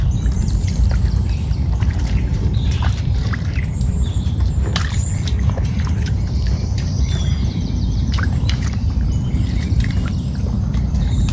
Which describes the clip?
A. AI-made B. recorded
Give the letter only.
A